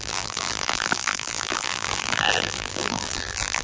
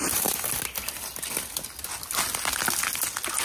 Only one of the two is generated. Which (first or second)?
first